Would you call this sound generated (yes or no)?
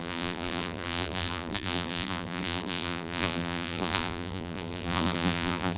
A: yes